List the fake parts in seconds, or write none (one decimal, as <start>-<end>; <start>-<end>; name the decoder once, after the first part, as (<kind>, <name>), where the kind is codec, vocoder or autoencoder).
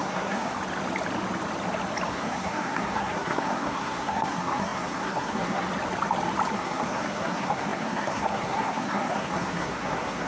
0.0-0.5 (codec, SNAC); 2.1-5.7; 6.5-10.3